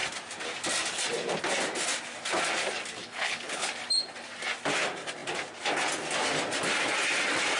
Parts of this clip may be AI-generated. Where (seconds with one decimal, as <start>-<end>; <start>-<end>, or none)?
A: 3.0-3.7